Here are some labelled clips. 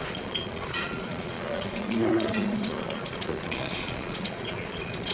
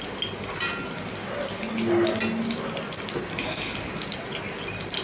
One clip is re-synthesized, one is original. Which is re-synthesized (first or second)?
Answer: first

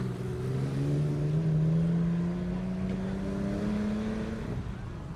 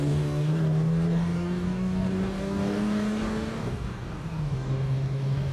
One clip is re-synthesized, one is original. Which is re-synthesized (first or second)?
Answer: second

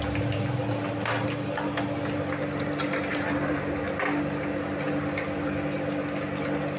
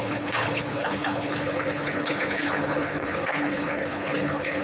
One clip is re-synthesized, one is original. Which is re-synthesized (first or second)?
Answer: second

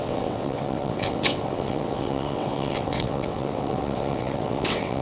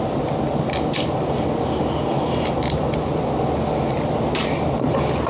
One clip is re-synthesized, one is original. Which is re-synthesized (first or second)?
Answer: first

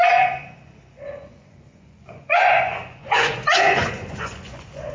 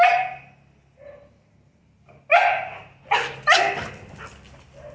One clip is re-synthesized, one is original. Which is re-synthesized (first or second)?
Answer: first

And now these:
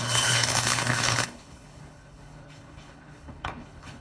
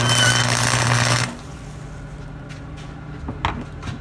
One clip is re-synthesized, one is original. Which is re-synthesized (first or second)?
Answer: first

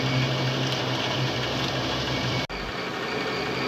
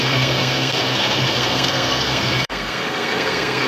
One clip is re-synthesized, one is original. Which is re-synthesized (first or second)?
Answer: second